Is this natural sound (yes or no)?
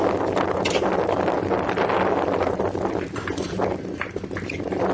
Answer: yes